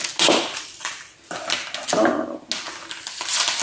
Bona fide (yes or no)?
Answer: yes